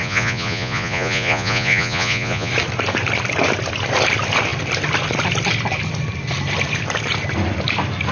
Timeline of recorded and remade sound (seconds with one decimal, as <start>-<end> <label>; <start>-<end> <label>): 0.0-2.5 remade; 2.5-8.1 recorded